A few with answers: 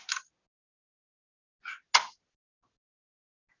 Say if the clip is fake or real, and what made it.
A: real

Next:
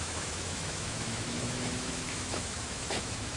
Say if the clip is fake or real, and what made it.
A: fake, autoencoder, DAC-VAE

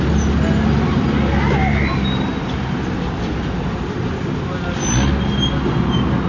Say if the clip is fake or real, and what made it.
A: real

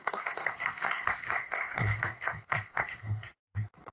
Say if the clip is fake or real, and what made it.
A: fake, codec, SNAC